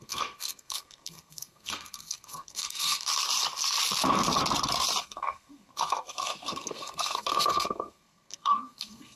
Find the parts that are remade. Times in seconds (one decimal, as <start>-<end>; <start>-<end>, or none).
0.0-3.1; 5.0-9.2